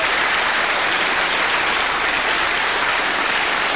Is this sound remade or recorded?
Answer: recorded